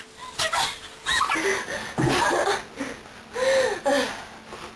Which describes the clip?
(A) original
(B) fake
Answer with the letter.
A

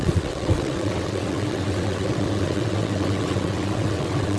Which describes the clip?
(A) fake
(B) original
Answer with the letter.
A